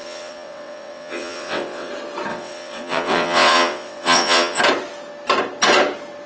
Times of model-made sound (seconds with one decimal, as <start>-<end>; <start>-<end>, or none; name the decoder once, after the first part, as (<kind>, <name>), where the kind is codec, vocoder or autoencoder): 0.0-1.9 (vocoder, WaveNeXt); 2.3-4.6